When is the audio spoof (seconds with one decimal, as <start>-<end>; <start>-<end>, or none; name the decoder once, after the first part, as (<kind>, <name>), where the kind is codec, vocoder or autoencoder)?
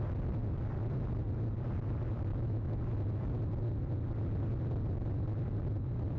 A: 2.3-2.8 (autoencoder, DAC-VAE)